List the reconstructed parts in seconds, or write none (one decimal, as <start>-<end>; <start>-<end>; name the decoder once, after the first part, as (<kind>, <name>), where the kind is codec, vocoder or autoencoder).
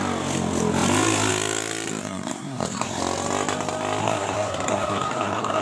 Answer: 2.0-3.0 (codec, SNAC); 4.0-5.6